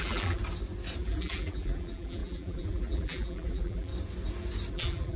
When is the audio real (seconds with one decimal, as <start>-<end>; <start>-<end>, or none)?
0.4-1.0; 3.9-4.7